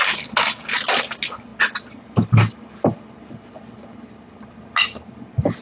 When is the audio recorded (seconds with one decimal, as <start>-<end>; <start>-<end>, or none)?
0.0-5.6